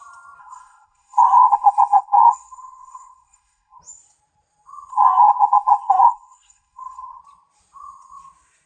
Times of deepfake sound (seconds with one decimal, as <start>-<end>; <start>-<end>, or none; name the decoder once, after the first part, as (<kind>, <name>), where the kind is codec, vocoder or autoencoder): 0.4-3.8 (codec, SNAC); 4.9-7.2